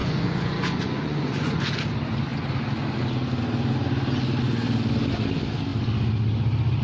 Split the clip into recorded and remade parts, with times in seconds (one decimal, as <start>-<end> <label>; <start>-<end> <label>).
0.0-1.6 remade; 1.6-6.8 recorded